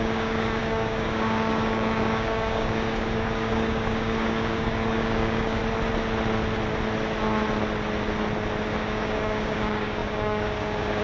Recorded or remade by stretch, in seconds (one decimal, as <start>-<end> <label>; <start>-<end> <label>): 0.0-5.6 remade; 5.6-8.8 recorded; 8.8-11.0 remade